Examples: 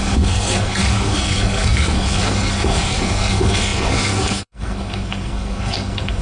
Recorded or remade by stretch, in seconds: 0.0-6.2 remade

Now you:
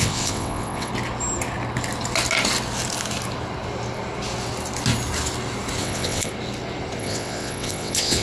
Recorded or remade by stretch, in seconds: 0.0-0.9 remade; 0.9-5.8 recorded; 5.8-6.3 remade; 6.3-7.0 recorded; 7.0-8.2 remade